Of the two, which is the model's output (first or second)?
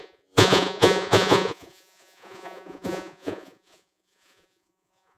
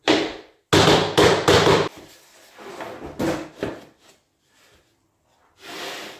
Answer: first